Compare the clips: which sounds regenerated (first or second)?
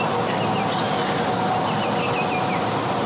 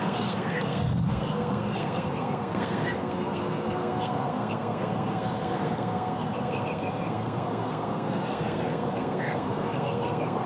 second